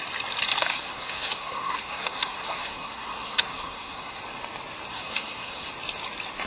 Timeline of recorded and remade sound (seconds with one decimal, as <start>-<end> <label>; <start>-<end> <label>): 0.0-0.7 recorded; 0.7-4.2 remade; 4.2-4.9 recorded; 4.9-5.7 remade; 5.7-6.5 recorded